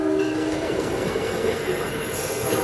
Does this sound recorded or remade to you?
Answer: remade